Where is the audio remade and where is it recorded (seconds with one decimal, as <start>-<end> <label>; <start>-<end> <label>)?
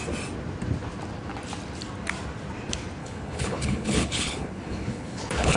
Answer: 0.0-3.0 recorded; 3.0-5.6 remade